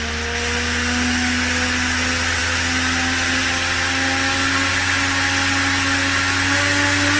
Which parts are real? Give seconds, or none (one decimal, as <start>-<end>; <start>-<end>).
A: 0.0-7.2